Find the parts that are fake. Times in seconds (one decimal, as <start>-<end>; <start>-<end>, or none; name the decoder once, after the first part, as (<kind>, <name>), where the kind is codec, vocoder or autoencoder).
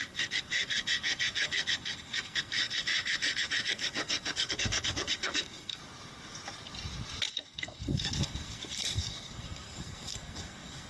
0.0-5.8 (codec, SNAC); 7.3-10.9